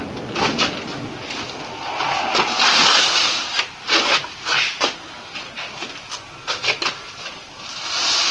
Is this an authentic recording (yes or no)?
yes